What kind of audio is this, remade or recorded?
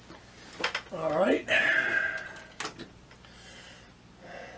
recorded